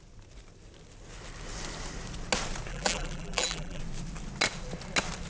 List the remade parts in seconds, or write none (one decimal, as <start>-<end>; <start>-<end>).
2.7-3.8